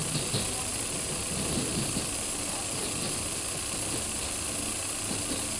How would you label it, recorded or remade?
recorded